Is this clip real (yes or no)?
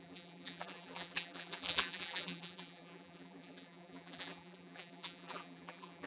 no